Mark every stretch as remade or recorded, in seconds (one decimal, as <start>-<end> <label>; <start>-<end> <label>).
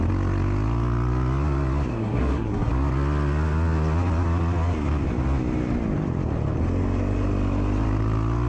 0.0-1.9 recorded; 1.9-2.7 remade; 2.7-8.5 recorded